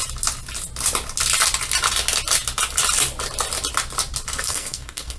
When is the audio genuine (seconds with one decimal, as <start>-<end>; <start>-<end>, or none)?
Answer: 0.0-4.3